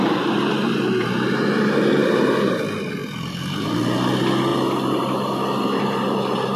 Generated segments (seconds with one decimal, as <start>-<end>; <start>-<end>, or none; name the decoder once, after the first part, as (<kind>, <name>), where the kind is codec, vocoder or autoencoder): none